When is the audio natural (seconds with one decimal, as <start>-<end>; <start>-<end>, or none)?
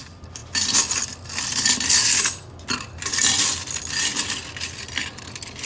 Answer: 0.0-5.6